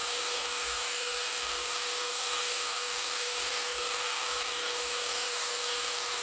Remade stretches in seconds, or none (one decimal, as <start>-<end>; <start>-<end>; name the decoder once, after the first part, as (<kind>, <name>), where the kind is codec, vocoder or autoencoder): 0.0-6.2 (codec, DAC)